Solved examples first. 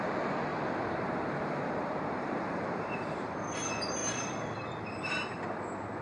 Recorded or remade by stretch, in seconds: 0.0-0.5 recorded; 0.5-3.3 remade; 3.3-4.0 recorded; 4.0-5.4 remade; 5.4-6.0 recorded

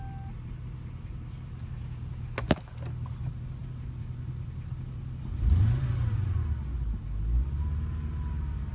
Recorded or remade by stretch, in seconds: 0.0-1.1 recorded; 1.1-1.6 remade; 1.6-8.7 recorded

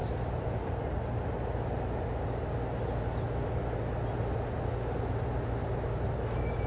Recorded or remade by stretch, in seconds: 0.0-1.0 remade; 1.0-6.7 recorded

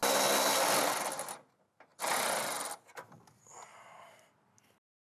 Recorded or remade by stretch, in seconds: 0.0-5.2 recorded

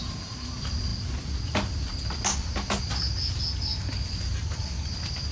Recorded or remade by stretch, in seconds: 0.0-5.3 recorded

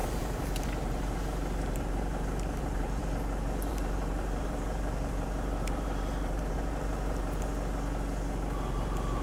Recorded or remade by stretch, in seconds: 0.0-3.0 remade; 3.0-3.7 recorded; 3.7-7.4 remade; 7.4-9.2 recorded

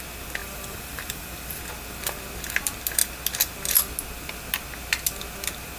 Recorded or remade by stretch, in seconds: 0.0-0.4 recorded; 0.4-1.6 remade; 1.6-5.8 recorded

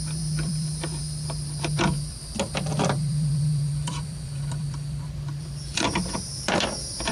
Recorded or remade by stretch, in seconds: 0.0-7.1 remade